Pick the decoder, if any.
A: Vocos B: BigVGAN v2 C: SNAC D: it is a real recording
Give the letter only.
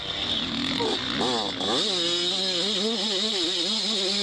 D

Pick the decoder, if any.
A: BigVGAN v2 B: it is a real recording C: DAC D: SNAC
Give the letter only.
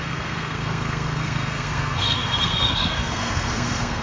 D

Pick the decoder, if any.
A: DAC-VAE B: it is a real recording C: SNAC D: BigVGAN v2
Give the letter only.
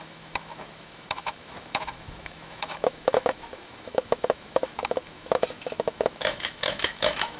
A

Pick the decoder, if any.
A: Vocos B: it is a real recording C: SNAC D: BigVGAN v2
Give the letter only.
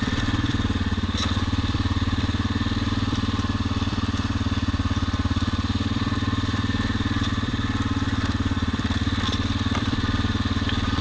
D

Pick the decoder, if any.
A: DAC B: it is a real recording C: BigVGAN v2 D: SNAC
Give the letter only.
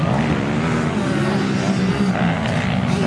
B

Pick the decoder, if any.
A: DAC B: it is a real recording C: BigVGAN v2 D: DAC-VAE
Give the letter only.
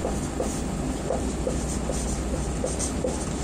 B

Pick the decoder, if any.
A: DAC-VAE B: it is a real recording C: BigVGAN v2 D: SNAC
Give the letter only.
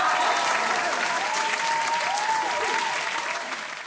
B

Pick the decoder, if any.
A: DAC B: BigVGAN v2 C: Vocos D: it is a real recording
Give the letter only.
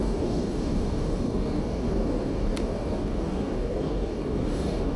A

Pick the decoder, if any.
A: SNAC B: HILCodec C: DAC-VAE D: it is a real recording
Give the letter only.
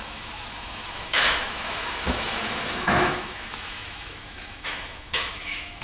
C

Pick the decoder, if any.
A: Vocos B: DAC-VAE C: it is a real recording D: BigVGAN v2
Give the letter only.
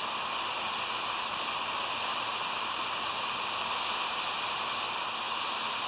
C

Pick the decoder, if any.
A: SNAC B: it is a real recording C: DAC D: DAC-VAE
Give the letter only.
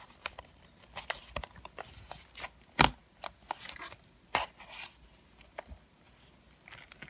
B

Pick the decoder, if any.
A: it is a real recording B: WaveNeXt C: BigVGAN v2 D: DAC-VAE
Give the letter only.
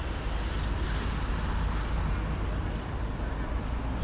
A